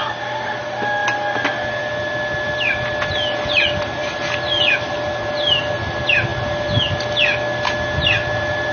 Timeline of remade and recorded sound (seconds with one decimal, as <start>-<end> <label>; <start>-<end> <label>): 0.0-0.6 remade; 0.6-4.0 recorded; 4.0-4.9 remade; 4.9-8.7 recorded